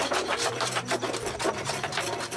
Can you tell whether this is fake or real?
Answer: fake